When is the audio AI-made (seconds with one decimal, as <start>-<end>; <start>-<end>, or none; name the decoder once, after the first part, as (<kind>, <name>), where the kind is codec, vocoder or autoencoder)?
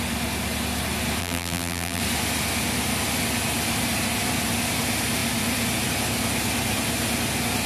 1.2-2.0 (vocoder, BigVGAN v2)